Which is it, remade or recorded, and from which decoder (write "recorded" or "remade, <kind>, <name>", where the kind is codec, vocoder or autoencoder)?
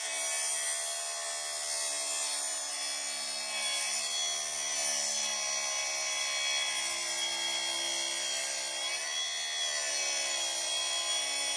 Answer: recorded